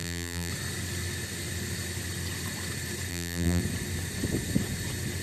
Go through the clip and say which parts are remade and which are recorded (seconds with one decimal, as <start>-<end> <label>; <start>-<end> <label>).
0.0-0.5 remade; 0.5-3.1 recorded; 3.1-3.6 remade; 3.6-5.2 recorded